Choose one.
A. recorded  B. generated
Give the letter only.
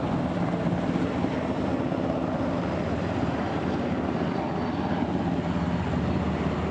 A